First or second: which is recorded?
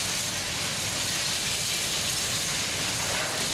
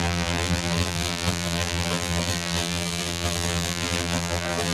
first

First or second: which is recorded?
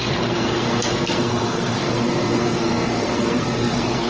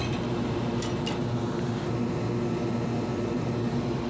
second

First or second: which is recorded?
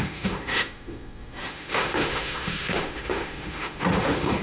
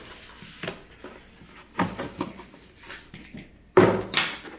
second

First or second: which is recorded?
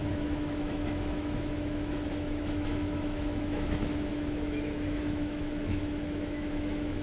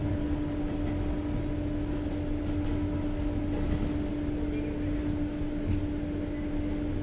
second